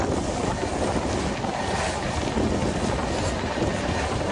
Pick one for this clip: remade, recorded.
recorded